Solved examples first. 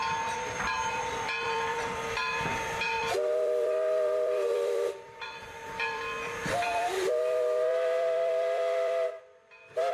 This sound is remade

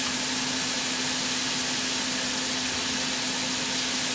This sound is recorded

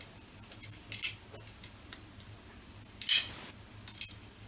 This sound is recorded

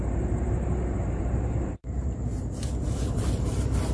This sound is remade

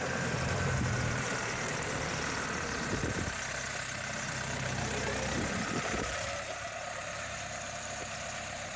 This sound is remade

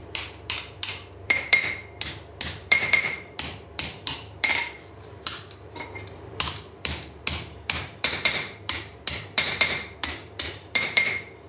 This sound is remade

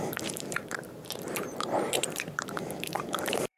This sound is remade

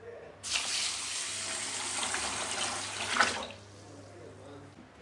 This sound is recorded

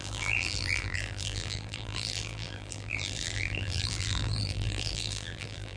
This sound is remade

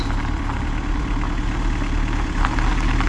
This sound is recorded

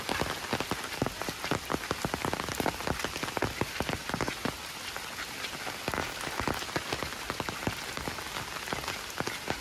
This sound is recorded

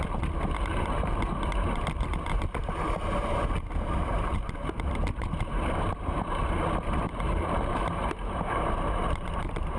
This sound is remade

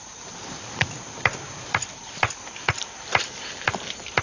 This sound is remade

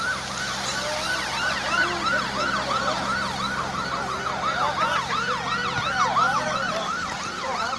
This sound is recorded